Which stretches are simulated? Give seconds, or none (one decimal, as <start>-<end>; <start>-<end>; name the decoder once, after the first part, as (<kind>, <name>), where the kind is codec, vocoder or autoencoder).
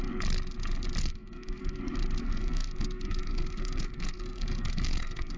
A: 1.0-1.8 (codec, SNAC); 2.2-5.4